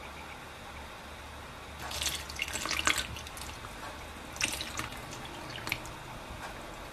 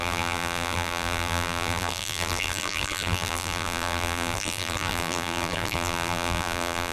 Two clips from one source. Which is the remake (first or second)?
second